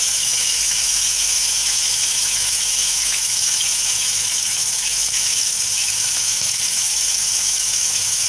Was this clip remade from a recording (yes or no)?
yes